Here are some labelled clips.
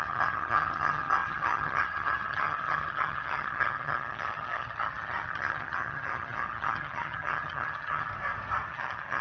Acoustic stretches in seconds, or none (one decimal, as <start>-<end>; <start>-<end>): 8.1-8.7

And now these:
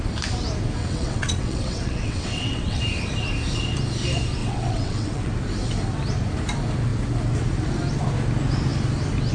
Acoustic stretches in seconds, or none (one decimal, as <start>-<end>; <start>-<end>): 0.0-0.8; 2.8-4.4; 5.3-9.3

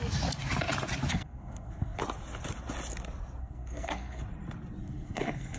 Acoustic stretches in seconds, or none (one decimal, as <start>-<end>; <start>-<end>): 0.0-1.1; 2.0-3.4; 4.2-4.8

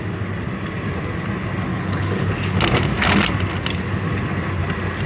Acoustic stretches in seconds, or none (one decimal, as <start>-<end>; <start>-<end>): 0.0-1.7; 2.3-5.1